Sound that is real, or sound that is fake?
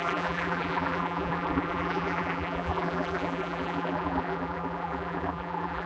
fake